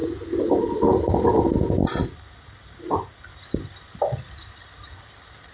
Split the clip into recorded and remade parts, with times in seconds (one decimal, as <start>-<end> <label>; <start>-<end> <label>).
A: 0.0-2.0 recorded; 2.0-5.5 remade